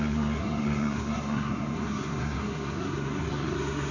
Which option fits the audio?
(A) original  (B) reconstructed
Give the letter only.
B